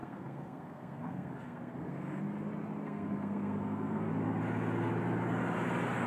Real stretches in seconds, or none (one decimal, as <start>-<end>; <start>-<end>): 2.2-2.8; 4.1-6.1